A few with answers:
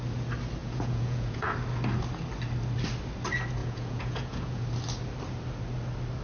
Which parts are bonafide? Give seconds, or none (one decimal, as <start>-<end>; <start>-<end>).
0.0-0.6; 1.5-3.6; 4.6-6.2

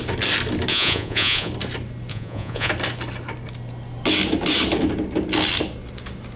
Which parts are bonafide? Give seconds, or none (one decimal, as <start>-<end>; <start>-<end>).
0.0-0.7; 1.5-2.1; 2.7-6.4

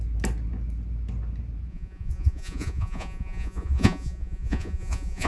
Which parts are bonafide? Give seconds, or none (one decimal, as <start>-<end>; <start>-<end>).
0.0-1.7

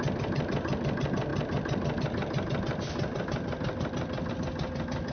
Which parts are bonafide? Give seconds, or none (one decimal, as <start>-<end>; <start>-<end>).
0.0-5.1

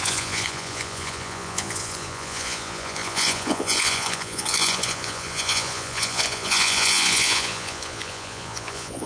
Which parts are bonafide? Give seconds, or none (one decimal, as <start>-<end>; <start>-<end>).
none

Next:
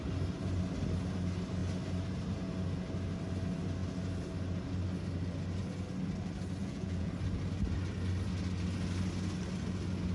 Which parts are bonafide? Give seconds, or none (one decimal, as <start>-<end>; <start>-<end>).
0.0-6.6; 7.1-10.1